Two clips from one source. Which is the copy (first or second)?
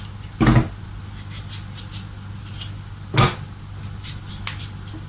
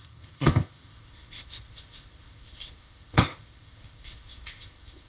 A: second